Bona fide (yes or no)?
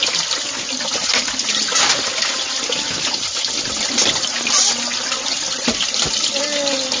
yes